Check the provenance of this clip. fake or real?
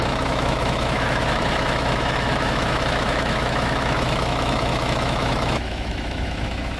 fake